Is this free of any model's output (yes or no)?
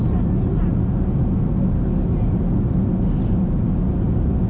yes